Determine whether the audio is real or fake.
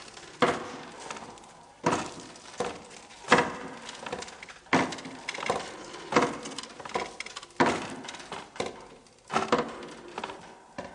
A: real